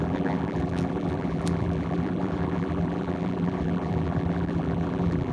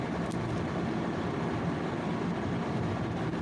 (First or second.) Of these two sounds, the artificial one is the first